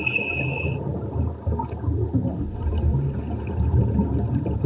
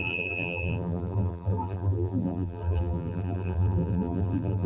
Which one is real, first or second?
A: first